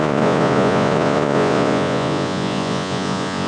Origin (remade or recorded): remade